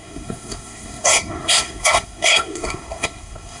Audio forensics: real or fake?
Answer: fake